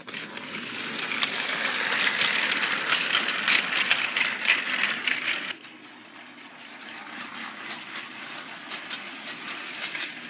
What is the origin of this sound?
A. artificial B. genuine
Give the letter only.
A